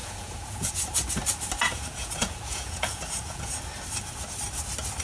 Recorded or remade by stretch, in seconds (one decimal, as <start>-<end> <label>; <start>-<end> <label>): 0.0-0.7 remade; 0.7-1.7 recorded; 1.7-3.6 remade; 3.6-5.0 recorded